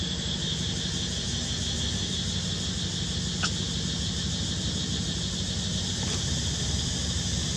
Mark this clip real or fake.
real